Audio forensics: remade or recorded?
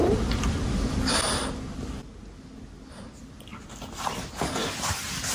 recorded